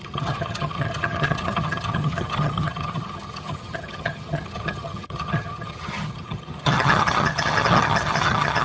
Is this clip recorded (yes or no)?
no